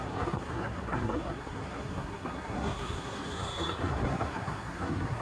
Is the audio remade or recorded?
remade